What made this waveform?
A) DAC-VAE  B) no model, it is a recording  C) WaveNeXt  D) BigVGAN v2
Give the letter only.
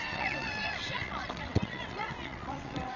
C